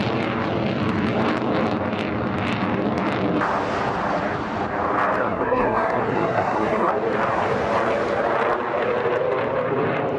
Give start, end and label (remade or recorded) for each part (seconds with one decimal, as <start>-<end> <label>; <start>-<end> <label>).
0.0-5.2 recorded; 5.2-6.9 remade; 6.9-10.2 recorded